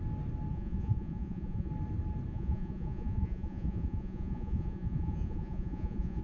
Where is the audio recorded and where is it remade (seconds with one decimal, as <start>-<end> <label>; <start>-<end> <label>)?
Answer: 0.0-0.5 recorded; 0.5-1.7 remade; 1.7-2.3 recorded; 2.3-6.2 remade

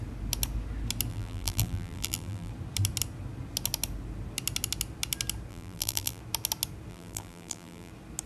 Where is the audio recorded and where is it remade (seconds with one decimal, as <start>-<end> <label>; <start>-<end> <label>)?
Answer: 0.0-1.1 recorded; 1.1-2.5 remade; 2.5-5.5 recorded; 5.5-6.2 remade; 6.2-6.9 recorded; 6.9-7.9 remade; 7.9-8.3 recorded

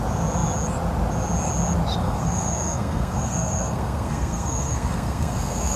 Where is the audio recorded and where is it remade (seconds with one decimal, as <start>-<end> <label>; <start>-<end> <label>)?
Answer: 0.0-2.0 recorded; 2.0-5.8 remade

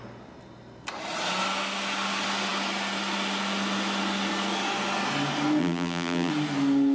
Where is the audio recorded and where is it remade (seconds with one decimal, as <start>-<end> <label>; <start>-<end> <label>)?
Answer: 0.0-5.6 recorded; 5.6-6.3 remade; 6.3-6.9 recorded

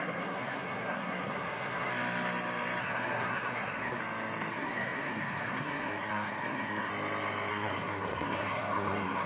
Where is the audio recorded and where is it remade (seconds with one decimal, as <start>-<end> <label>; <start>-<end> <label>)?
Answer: 0.0-1.9 remade; 1.9-2.8 recorded; 2.8-4.0 remade; 4.0-4.5 recorded; 4.5-6.9 remade; 6.9-7.5 recorded; 7.5-9.3 remade